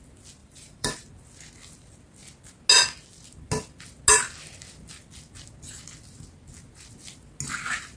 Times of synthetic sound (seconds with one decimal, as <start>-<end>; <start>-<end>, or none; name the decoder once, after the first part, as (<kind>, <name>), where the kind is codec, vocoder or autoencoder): 0.4-1.1 (vocoder, BigVGAN v2)